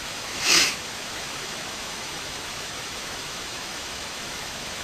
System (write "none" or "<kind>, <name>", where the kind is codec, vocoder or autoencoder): autoencoder, DAC-VAE